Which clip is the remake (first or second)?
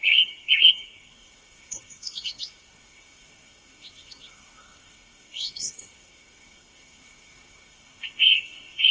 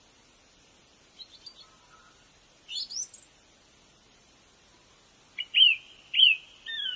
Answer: first